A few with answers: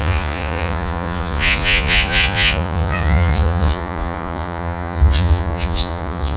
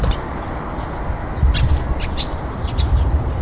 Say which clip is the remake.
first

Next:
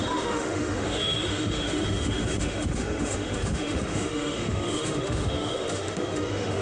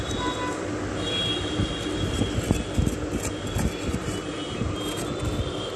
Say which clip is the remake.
first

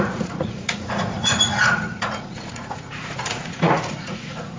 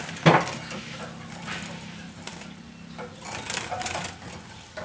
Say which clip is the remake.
first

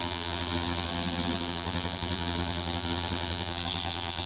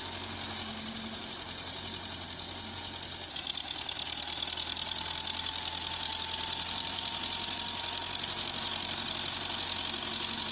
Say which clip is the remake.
first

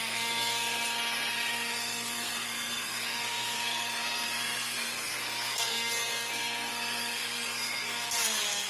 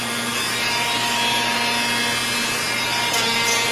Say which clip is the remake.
first